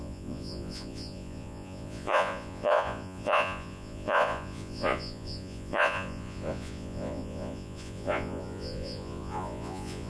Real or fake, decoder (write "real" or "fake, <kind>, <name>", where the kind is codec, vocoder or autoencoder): fake, vocoder, Vocos